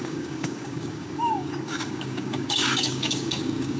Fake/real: fake